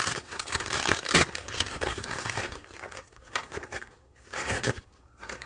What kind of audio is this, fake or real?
fake